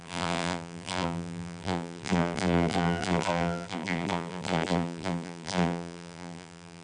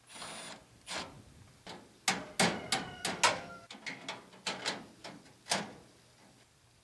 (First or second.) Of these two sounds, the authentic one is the second